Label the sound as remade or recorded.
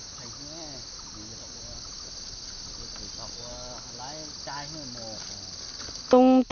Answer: recorded